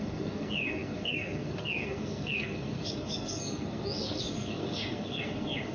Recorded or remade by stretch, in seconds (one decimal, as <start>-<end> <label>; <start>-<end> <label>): 0.0-5.7 remade

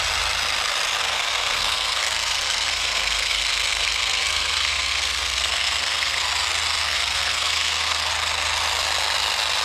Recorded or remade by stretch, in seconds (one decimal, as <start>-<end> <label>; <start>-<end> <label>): 0.0-1.0 recorded; 1.0-6.2 remade; 6.2-6.8 recorded; 6.8-8.1 remade; 8.1-9.6 recorded

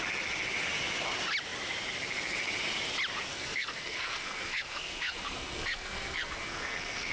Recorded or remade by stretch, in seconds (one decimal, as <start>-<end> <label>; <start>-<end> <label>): 0.0-3.3 recorded; 3.3-7.1 remade

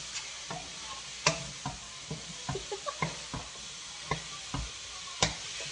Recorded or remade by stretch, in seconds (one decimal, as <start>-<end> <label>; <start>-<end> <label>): 0.0-5.7 recorded

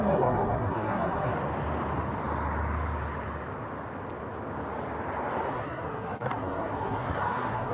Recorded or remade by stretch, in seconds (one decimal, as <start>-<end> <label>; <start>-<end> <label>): 0.0-1.3 remade; 1.3-5.5 recorded; 5.5-7.7 remade

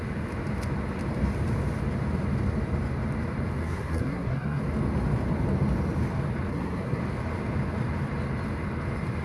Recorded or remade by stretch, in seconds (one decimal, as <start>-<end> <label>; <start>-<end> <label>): 0.0-3.6 recorded; 3.6-4.6 remade; 4.6-6.5 recorded; 6.5-7.0 remade; 7.0-9.2 recorded